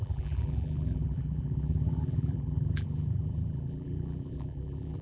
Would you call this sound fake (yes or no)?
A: yes